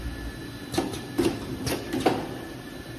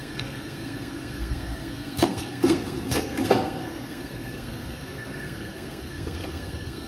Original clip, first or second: first